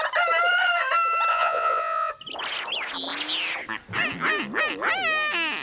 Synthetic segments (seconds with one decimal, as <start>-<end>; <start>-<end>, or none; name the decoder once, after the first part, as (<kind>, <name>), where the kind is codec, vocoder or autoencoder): 1.3-2.1 (vocoder, Vocos)